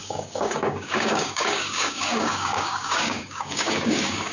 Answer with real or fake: fake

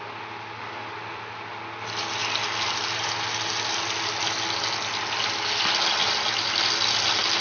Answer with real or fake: real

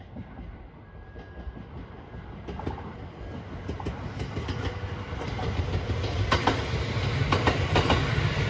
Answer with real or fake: real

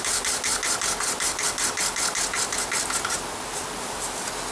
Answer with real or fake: real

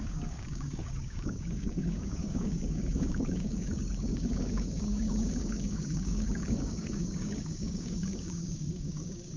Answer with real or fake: fake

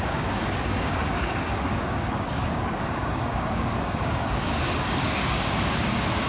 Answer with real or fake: fake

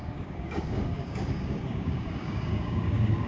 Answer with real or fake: fake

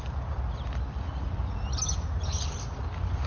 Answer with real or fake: real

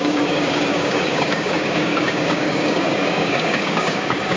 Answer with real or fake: fake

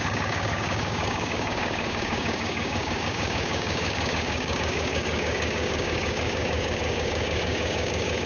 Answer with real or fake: fake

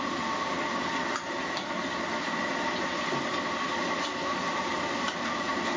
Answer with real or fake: real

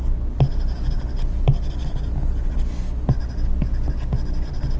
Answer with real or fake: real